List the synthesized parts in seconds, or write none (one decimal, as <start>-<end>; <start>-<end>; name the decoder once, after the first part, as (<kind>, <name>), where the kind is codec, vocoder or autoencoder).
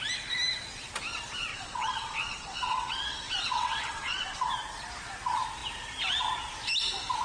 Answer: 1.5-4.5 (vocoder, WaveNeXt)